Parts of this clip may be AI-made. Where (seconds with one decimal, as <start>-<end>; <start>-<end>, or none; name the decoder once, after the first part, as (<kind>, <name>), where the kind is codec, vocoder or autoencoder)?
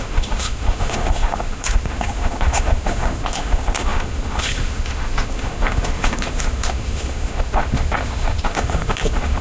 0.0-9.4 (autoencoder, DAC-VAE)